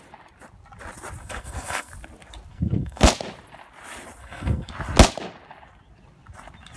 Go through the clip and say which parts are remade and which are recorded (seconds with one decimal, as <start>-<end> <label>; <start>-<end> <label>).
0.0-1.2 recorded; 1.2-1.9 remade; 1.9-2.5 recorded; 2.5-3.1 remade; 3.1-4.2 recorded; 4.2-4.7 remade; 4.7-6.8 recorded